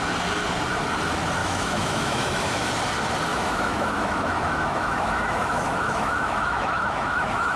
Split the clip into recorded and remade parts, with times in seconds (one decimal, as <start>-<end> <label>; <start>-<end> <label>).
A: 0.0-1.4 recorded; 1.4-2.7 remade; 2.7-3.3 recorded; 3.3-7.6 remade